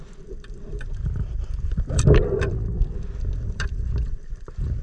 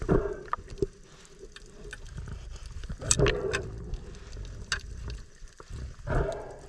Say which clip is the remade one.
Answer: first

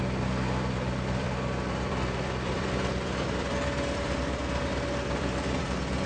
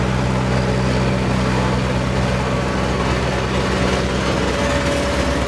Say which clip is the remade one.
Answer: first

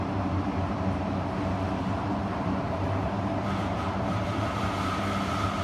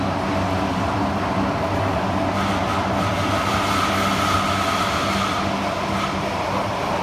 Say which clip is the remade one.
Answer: first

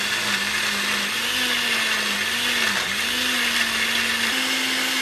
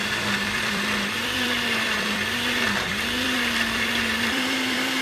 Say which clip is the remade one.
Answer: second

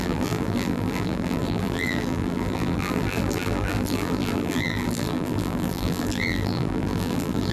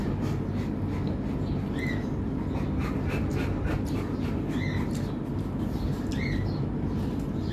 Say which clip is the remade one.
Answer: first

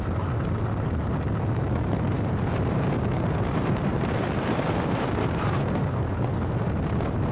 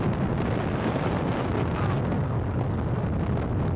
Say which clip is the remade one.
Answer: first